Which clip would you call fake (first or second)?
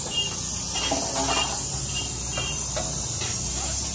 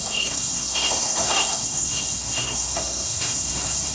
second